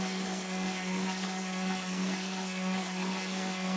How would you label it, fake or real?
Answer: fake